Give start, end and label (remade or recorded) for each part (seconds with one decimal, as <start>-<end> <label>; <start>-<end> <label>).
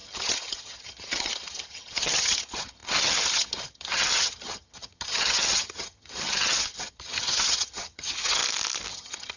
0.0-8.4 remade; 8.4-8.9 recorded; 8.9-9.4 remade